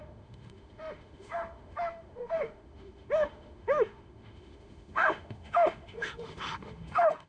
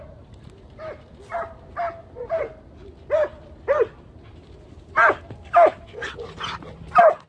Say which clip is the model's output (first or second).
first